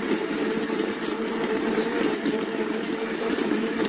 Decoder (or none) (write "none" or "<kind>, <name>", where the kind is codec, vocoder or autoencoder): vocoder, BigVGAN v2